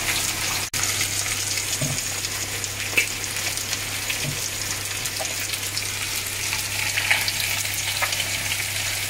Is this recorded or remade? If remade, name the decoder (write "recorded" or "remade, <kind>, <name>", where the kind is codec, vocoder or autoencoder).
recorded